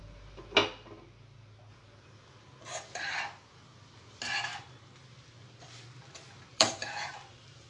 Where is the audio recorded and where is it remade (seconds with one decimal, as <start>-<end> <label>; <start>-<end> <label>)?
0.0-6.5 recorded; 6.5-7.7 remade